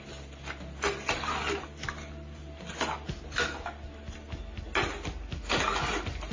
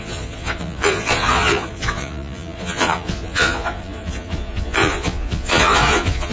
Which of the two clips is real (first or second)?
first